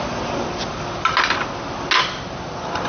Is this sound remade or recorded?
recorded